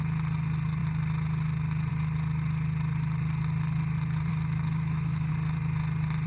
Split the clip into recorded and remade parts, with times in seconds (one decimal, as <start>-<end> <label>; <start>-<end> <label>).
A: 0.0-4.3 recorded; 4.3-5.3 remade; 5.3-6.3 recorded